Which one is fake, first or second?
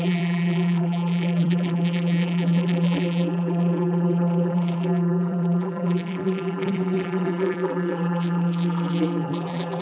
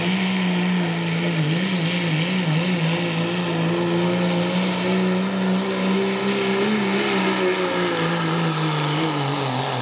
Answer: first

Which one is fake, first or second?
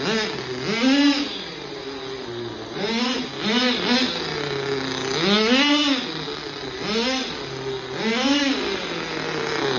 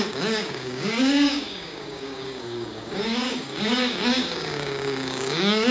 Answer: second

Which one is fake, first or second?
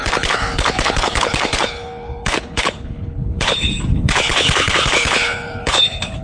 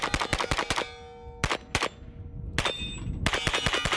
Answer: first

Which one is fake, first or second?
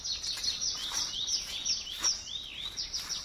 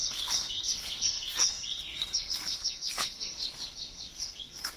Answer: second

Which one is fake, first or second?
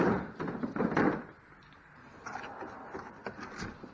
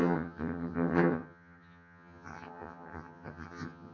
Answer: second